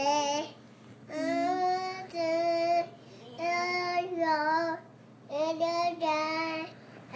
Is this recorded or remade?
recorded